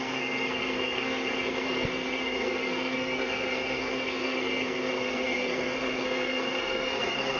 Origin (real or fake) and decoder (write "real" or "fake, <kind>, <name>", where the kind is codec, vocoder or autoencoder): fake, codec, SNAC